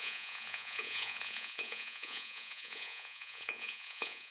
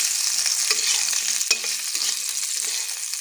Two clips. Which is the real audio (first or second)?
second